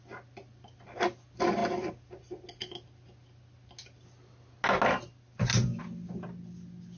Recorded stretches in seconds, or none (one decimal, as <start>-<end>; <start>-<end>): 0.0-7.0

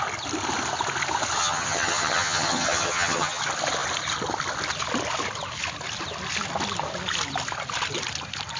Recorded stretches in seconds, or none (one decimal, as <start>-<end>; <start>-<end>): 0.0-1.4; 3.4-8.6

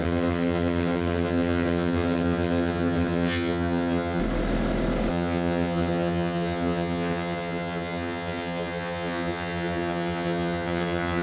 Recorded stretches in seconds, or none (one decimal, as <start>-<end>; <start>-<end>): 4.2-5.1

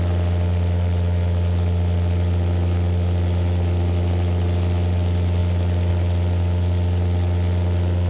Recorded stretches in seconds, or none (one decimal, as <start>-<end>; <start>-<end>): 0.0-8.1

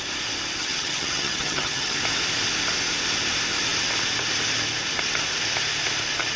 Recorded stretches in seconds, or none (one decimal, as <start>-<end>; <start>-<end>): 0.0-0.6; 2.0-6.4

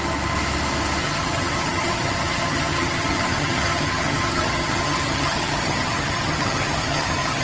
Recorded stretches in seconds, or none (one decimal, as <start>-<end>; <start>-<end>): 0.0-1.0